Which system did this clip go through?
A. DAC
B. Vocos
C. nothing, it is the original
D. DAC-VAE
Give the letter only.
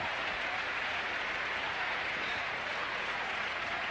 B